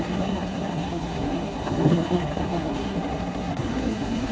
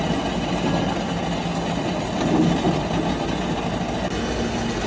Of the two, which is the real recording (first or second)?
second